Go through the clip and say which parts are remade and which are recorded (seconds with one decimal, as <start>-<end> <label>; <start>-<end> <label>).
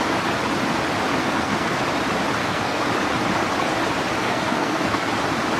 0.0-1.2 recorded; 1.2-1.8 remade; 1.8-2.4 recorded; 2.4-2.9 remade; 2.9-4.2 recorded; 4.2-5.1 remade; 5.1-5.6 recorded